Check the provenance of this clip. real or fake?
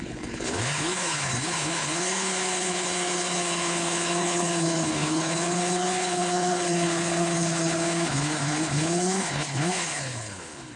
fake